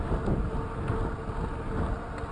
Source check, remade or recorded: recorded